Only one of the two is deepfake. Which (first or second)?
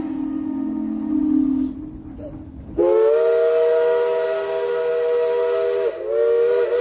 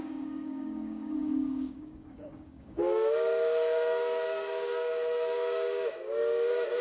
second